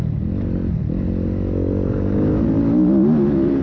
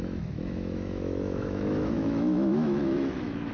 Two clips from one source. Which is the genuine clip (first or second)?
first